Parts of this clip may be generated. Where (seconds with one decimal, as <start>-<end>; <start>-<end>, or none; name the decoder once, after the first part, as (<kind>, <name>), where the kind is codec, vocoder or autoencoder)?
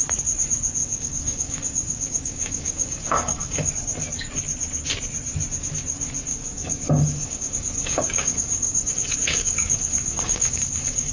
0.8-3.7 (codec, DAC); 6.3-11.1